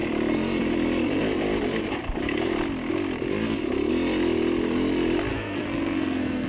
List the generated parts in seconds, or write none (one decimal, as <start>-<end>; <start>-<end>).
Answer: 5.3-6.5